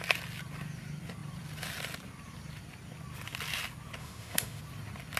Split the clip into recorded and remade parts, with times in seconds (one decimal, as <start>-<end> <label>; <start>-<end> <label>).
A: 0.0-4.0 recorded; 4.0-4.6 remade; 4.6-5.2 recorded